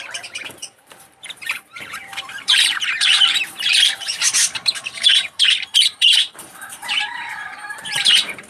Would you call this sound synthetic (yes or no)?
yes